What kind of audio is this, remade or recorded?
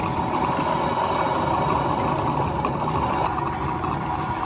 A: recorded